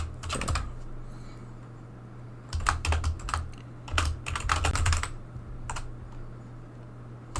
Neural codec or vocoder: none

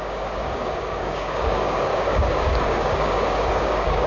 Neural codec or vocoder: codec, DAC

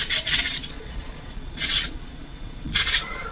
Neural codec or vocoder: vocoder, Vocos